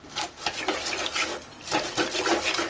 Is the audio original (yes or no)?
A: yes